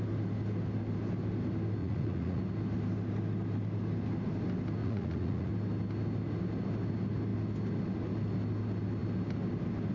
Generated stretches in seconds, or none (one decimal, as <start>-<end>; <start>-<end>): 1.8-2.4; 4.8-5.5